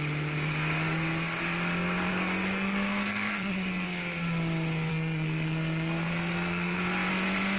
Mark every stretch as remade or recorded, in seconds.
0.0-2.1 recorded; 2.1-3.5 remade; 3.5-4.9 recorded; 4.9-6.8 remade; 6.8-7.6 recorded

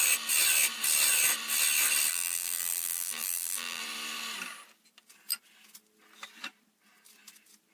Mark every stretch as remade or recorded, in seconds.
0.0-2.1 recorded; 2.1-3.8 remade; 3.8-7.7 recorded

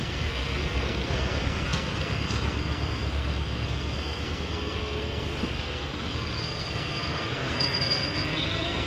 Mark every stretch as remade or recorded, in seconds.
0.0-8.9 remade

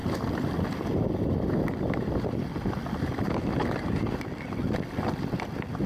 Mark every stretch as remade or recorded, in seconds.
0.0-5.9 recorded

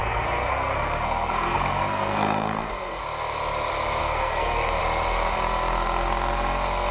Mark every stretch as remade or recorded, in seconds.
0.0-3.0 remade; 3.0-4.0 recorded; 4.0-4.8 remade; 4.8-6.9 recorded

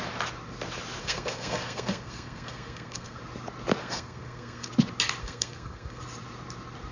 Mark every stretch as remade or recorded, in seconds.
0.0-1.0 recorded; 1.0-3.2 remade; 3.2-3.8 recorded; 3.8-4.7 remade; 4.7-5.2 recorded; 5.2-6.0 remade; 6.0-6.9 recorded

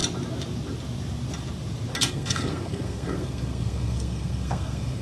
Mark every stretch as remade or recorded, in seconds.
0.0-2.1 recorded; 2.1-5.0 remade